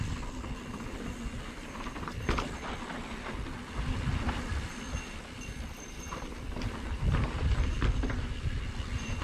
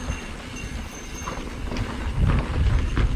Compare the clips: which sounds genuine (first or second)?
second